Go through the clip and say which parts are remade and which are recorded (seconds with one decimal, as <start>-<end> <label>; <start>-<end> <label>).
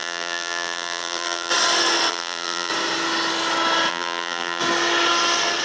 0.0-1.5 remade; 1.5-2.1 recorded; 2.1-2.7 remade; 2.7-3.9 recorded; 3.9-4.6 remade; 4.6-5.6 recorded